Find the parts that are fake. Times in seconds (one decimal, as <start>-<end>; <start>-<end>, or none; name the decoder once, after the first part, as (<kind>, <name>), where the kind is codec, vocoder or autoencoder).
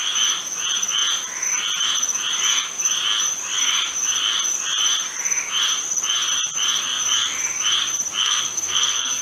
8.2-9.2 (codec, SNAC)